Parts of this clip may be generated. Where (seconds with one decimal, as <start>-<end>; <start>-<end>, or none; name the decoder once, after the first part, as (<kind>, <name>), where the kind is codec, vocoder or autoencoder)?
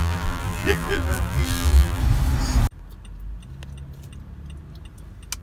0.0-2.0 (vocoder, BigVGAN v2)